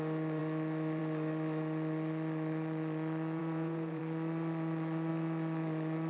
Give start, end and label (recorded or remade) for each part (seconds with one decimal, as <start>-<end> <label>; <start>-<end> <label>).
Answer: 0.0-3.4 recorded; 3.4-4.0 remade; 4.0-6.1 recorded